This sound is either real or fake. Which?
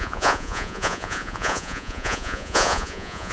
fake